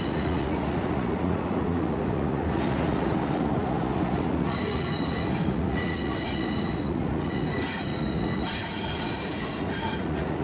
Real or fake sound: fake